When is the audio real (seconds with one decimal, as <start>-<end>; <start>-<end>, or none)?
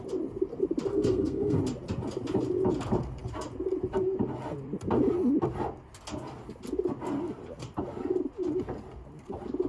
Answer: 0.0-0.9; 1.6-9.7